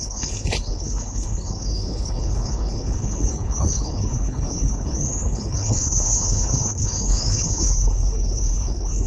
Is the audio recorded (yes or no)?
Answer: no